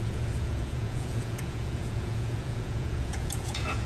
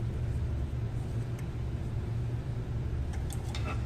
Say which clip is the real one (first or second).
second